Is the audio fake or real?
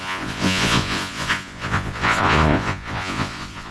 fake